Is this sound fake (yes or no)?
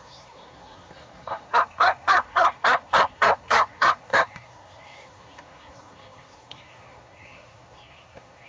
yes